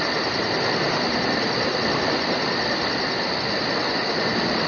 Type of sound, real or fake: real